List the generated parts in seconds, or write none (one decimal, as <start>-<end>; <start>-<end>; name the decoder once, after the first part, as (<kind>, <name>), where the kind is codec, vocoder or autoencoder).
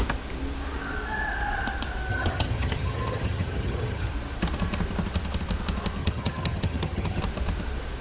2.1-4.1 (vocoder, HiFi-GAN); 6.0-7.2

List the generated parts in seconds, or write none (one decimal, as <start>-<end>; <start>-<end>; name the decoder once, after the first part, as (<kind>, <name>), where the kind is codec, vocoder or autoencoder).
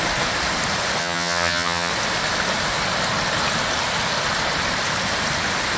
1.0-1.9 (vocoder, HiFi-GAN)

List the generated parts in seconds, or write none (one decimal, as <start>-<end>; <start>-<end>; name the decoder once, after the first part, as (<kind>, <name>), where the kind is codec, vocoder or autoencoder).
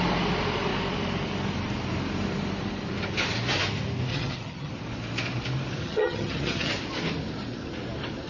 4.1-4.7 (vocoder, HiFi-GAN); 5.8-6.7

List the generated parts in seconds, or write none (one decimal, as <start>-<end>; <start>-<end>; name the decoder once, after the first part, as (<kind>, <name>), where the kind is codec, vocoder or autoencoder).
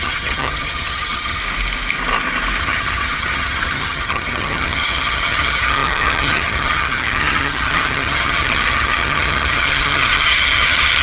0.0-1.4 (vocoder, HiFi-GAN); 2.6-11.0